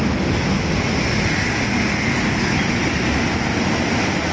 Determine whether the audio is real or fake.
real